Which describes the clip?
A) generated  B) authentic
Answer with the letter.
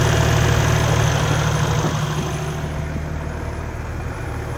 B